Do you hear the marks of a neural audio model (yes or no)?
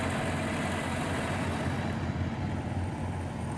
no